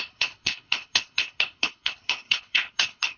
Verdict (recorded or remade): remade